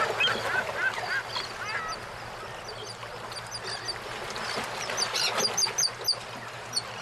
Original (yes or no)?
yes